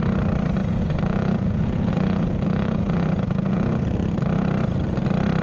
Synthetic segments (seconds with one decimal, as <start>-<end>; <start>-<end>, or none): 0.6-3.8